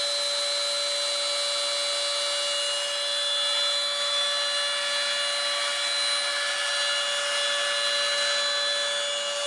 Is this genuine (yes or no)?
yes